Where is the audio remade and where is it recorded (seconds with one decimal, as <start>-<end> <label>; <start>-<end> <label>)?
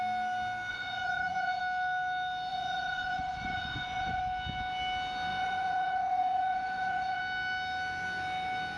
0.0-0.7 recorded; 0.7-1.6 remade; 1.6-2.5 recorded; 2.5-4.2 remade; 4.2-5.3 recorded; 5.3-7.2 remade; 7.2-8.8 recorded